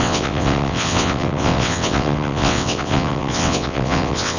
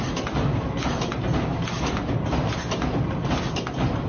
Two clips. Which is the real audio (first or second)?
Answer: second